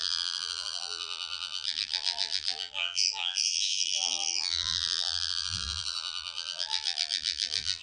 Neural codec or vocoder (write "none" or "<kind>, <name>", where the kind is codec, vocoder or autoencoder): vocoder, BigVGAN v2